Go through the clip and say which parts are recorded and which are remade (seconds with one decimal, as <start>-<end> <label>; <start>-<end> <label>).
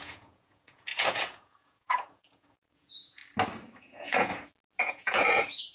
0.0-3.2 remade; 3.2-3.8 recorded; 3.8-4.3 remade; 4.3-4.8 recorded; 4.8-5.7 remade